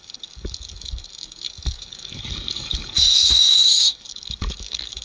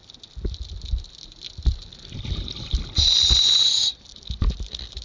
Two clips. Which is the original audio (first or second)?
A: second